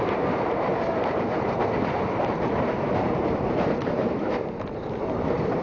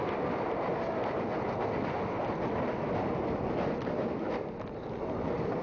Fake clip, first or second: first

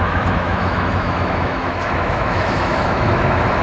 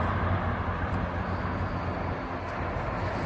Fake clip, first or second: first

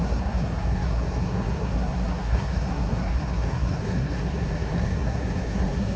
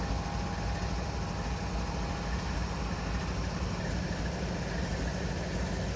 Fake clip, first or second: first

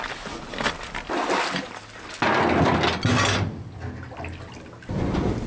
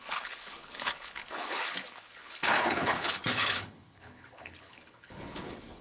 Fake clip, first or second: second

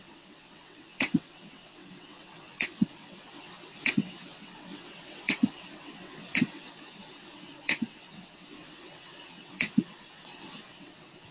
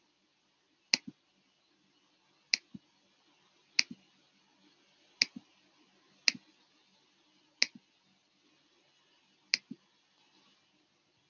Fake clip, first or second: first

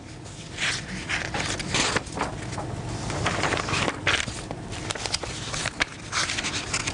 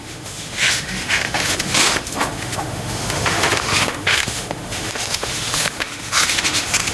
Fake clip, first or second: second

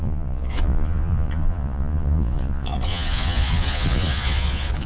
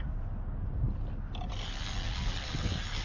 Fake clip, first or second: first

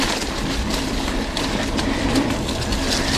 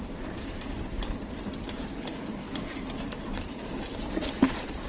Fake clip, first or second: second